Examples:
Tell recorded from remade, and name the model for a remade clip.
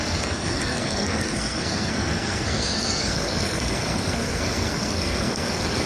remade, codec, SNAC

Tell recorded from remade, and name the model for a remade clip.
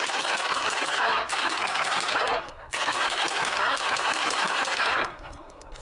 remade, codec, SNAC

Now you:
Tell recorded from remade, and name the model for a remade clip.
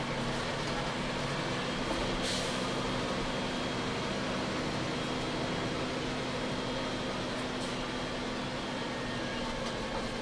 recorded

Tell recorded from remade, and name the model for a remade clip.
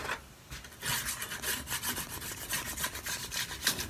recorded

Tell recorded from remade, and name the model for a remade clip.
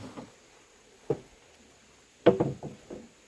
recorded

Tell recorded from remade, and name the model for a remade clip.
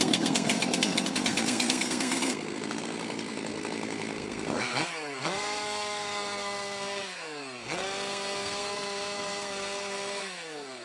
remade, codec, SNAC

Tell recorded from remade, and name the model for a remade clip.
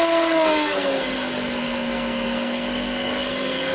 remade, codec, SNAC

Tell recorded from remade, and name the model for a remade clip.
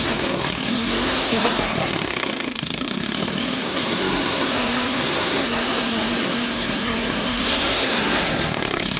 remade, codec, SNAC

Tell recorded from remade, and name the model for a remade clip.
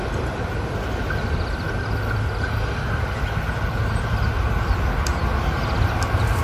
recorded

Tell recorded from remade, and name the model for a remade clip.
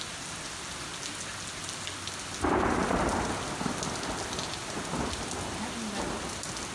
recorded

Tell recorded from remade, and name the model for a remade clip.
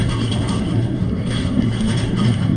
remade, codec, SNAC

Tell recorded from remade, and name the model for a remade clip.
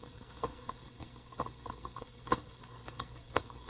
remade, codec, SNAC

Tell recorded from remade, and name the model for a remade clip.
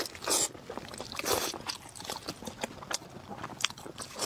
recorded